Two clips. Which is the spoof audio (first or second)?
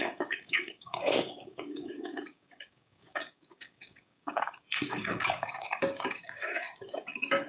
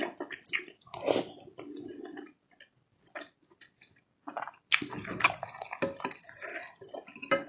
first